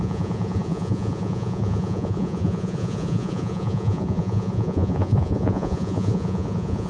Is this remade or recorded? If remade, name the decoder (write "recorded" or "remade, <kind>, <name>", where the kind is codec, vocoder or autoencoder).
remade, vocoder, Vocos